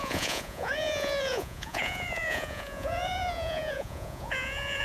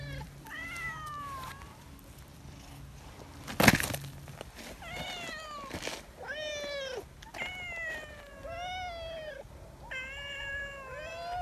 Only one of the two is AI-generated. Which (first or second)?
first